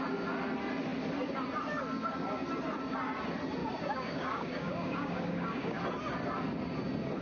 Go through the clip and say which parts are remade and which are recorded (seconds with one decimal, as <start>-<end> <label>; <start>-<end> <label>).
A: 0.0-3.6 recorded; 3.6-5.8 remade; 5.8-7.2 recorded